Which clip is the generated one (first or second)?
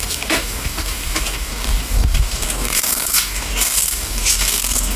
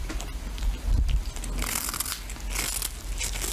first